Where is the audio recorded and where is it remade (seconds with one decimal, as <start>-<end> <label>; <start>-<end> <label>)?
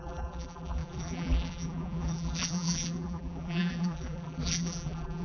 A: 0.0-5.2 remade